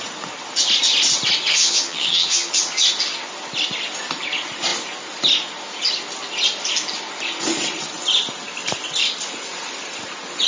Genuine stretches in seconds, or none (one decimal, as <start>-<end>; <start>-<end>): 0.0-1.5; 2.5-10.5